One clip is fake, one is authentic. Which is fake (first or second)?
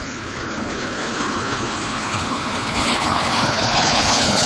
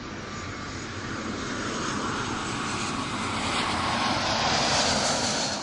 first